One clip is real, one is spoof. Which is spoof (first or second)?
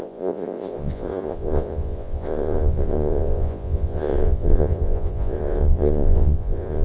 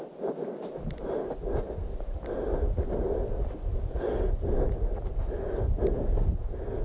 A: first